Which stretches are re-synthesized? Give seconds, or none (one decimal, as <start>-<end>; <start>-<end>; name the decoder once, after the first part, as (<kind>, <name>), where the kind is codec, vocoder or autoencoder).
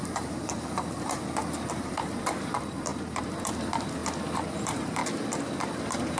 0.0-1.2 (vocoder, BigVGAN v2); 1.7-4.0; 4.6-5.0; 5.8-6.2